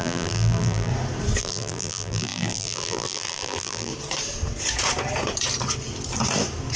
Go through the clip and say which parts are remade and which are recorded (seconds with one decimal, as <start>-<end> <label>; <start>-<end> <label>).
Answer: 0.0-0.9 remade; 0.9-1.4 recorded; 1.4-3.9 remade; 3.9-6.8 recorded